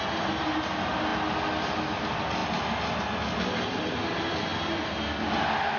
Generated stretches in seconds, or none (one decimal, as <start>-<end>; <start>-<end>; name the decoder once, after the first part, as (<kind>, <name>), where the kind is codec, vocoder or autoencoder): none

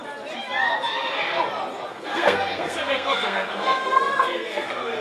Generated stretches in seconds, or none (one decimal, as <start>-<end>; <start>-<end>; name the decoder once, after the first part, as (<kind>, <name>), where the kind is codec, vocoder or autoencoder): 1.9-5.0 (codec, SNAC)

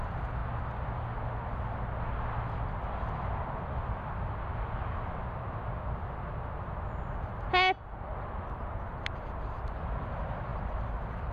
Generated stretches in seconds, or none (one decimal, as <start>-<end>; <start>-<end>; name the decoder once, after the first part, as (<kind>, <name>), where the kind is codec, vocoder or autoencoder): none

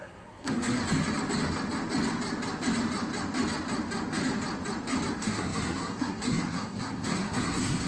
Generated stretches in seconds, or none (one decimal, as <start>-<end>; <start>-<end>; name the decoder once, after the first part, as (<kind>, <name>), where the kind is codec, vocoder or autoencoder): 0.0-0.8 (codec, SNAC); 5.1-7.9

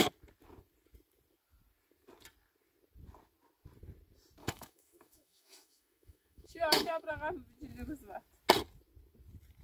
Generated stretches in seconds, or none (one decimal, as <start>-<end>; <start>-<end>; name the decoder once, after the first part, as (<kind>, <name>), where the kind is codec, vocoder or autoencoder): 4.4-7.1 (autoencoder, DAC-VAE)

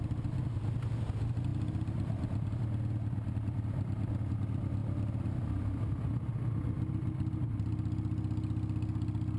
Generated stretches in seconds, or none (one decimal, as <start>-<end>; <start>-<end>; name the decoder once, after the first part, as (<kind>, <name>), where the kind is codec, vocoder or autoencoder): none

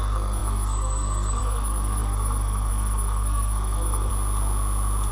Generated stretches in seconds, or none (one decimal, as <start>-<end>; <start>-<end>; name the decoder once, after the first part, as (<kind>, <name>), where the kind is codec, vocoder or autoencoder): 0.0-4.1 (codec, SNAC)

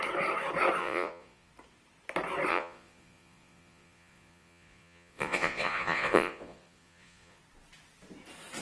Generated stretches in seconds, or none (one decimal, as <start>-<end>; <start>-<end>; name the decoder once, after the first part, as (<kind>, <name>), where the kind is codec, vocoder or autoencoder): 0.8-1.5 (vocoder, Vocos); 2.5-7.4